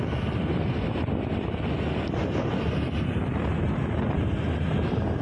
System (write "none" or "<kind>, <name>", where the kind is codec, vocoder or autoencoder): none